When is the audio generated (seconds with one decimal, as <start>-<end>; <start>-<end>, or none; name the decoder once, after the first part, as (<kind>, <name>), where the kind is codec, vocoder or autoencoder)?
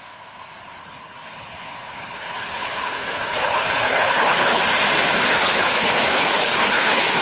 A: 0.8-4.6 (codec, HILCodec); 5.3-7.2